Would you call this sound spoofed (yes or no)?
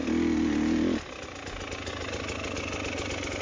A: no